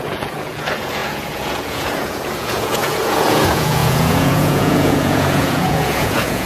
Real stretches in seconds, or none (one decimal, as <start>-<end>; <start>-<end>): none